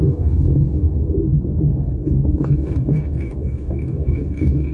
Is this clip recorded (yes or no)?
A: no